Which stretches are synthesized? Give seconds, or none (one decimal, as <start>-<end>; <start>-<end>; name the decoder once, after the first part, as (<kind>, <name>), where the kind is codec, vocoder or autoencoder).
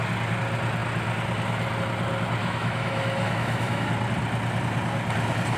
2.4-3.9 (autoencoder, DAC-VAE)